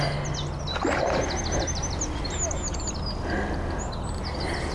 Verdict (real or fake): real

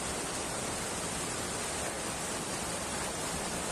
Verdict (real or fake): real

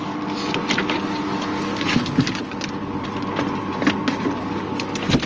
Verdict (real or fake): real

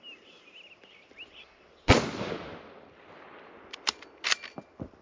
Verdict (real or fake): real